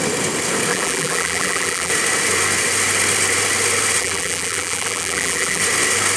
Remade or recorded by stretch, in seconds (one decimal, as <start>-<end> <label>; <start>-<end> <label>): 0.0-0.7 recorded; 0.7-1.9 remade; 1.9-4.0 recorded; 4.0-5.6 remade; 5.6-6.2 recorded